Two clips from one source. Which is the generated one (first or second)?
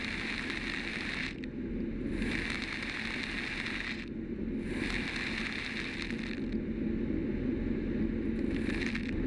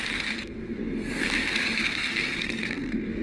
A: second